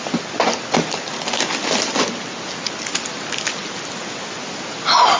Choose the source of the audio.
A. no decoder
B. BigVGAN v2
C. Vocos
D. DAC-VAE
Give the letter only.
A